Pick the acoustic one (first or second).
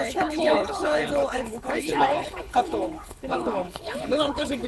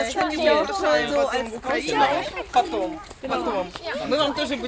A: second